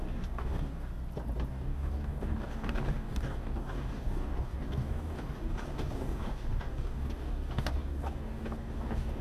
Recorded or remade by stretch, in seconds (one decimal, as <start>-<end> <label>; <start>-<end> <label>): 0.0-0.9 remade; 0.9-1.5 recorded; 1.5-9.2 remade